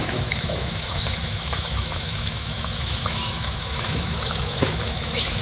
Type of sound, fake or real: fake